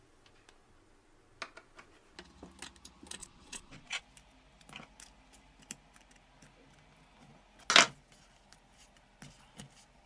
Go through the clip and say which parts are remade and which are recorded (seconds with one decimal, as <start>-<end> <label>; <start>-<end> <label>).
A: 0.0-3.2 recorded; 3.2-4.0 remade; 4.0-10.1 recorded